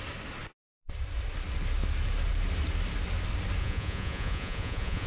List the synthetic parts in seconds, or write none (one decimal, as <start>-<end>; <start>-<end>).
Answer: 3.6-5.1